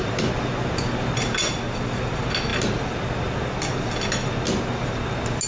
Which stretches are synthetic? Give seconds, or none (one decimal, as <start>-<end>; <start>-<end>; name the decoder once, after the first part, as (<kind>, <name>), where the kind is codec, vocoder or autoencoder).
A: none